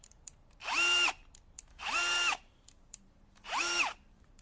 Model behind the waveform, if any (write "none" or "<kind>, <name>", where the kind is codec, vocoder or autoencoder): vocoder, BigVGAN v2